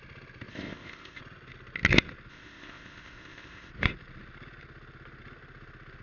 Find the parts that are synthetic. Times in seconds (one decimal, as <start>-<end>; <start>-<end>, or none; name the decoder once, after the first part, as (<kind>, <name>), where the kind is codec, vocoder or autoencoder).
0.5-1.2 (codec, ZipCodec); 2.3-3.7